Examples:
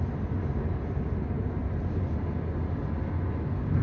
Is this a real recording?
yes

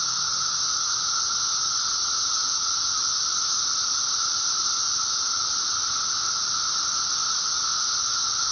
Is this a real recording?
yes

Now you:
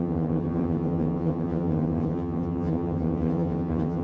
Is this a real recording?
no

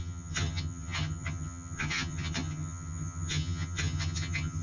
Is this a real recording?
no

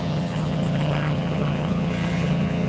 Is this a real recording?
no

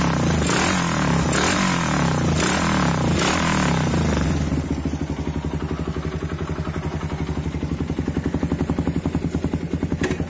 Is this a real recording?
yes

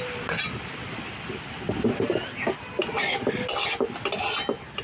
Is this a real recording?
yes